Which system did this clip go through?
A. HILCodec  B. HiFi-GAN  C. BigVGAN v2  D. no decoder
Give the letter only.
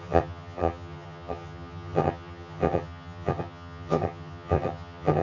B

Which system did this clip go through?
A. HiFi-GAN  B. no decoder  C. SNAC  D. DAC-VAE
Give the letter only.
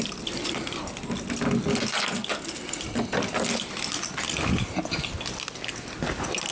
B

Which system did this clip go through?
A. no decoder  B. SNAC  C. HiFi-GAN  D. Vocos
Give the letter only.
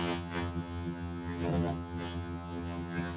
C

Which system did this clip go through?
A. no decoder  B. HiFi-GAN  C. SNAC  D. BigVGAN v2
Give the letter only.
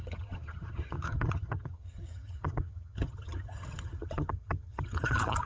B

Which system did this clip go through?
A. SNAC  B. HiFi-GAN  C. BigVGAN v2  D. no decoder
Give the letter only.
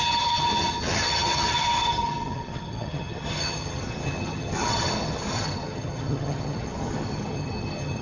B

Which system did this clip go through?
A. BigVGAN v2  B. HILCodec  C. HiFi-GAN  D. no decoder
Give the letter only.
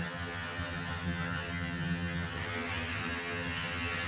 C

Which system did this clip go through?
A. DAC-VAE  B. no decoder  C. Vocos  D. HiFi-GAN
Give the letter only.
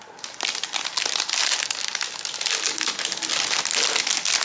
B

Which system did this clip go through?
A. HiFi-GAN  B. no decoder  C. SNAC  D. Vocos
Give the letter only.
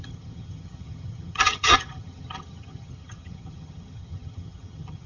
A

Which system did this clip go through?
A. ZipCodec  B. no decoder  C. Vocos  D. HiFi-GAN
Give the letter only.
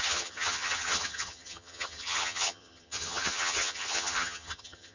D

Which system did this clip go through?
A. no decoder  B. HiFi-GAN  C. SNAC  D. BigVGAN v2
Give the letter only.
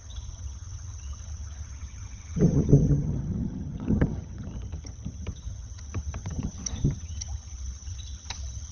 B